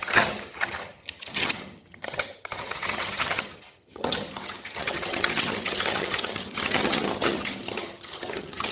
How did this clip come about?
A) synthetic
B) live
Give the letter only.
A